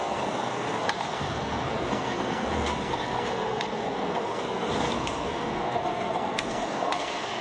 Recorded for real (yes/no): no